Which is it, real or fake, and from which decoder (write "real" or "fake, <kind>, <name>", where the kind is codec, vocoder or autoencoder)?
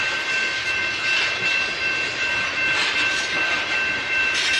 real